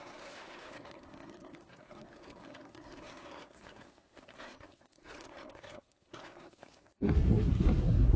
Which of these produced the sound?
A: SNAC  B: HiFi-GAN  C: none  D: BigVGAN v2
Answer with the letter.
A